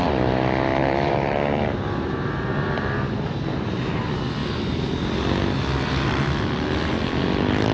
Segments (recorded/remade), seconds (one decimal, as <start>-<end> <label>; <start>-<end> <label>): 0.0-0.7 recorded; 0.7-3.8 remade; 3.8-7.7 recorded